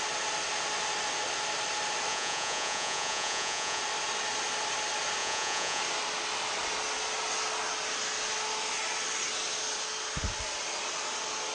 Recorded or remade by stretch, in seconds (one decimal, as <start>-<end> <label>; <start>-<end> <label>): 0.0-2.1 recorded; 2.1-3.8 remade; 3.8-5.2 recorded; 5.2-5.8 remade; 5.8-11.5 recorded